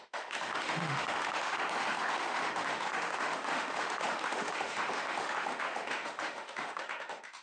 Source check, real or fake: fake